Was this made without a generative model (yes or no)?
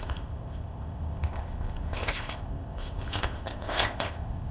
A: no